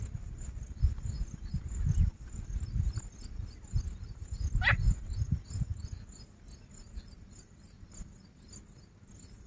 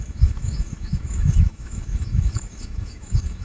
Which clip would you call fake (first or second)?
second